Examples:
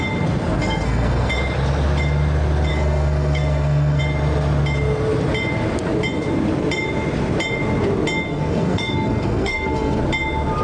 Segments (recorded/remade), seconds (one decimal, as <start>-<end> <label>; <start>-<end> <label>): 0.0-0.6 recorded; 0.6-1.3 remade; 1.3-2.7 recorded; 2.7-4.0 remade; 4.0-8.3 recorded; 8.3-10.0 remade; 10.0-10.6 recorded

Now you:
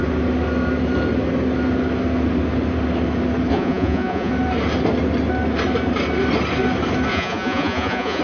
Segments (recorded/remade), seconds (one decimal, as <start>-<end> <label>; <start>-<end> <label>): 0.0-3.5 recorded; 3.5-4.3 remade; 4.3-7.1 recorded; 7.1-8.2 remade

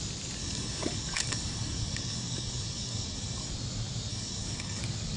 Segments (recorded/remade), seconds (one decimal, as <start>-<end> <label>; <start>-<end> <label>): 0.0-0.4 recorded; 0.4-3.5 remade; 3.5-4.1 recorded; 4.1-4.8 remade; 4.8-5.2 recorded